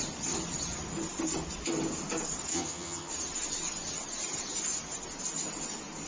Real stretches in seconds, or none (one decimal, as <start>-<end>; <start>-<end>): 0.0-2.5; 3.1-6.1